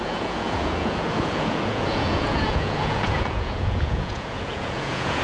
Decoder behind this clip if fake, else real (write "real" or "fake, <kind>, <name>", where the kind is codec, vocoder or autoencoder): fake, vocoder, Vocos